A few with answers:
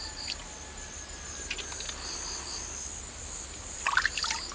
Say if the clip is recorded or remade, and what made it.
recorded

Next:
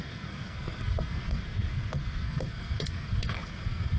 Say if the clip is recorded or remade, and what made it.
remade, codec, SNAC